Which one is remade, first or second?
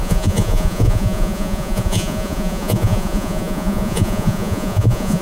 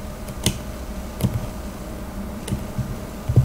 first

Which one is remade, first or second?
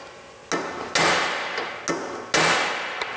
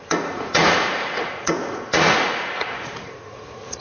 second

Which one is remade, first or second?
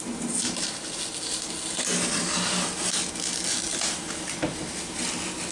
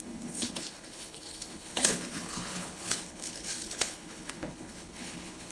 second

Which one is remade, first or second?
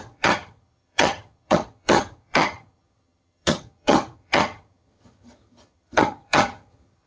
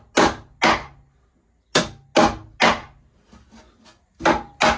first